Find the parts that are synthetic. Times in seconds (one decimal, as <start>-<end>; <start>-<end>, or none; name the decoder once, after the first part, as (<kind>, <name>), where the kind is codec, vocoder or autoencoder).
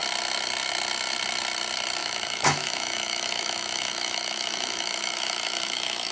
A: 2.0-6.1 (autoencoder, DAC-VAE)